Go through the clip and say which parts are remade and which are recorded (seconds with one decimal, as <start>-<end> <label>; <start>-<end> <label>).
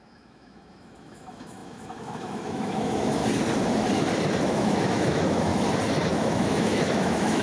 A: 0.0-3.2 remade; 3.2-4.4 recorded; 4.4-5.5 remade; 5.5-6.1 recorded; 6.1-7.4 remade